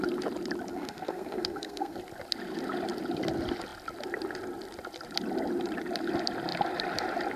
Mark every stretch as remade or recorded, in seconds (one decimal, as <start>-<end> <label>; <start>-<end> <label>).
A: 0.0-0.7 recorded; 0.7-2.0 remade; 2.0-7.4 recorded